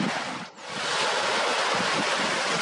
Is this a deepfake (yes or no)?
no